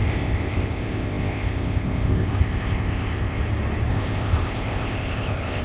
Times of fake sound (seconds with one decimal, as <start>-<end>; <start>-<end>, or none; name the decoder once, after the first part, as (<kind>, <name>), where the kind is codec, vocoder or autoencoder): 0.0-3.4 (codec, ZipCodec); 3.9-5.6